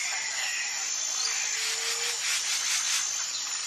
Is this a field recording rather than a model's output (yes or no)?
yes